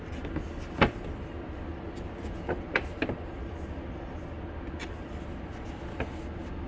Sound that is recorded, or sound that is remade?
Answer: recorded